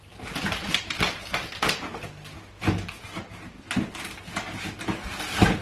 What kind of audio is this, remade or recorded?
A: recorded